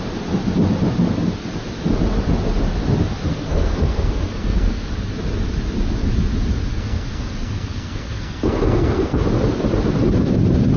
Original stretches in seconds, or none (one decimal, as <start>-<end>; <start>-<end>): 0.0-3.3; 4.9-6.7; 9.2-10.8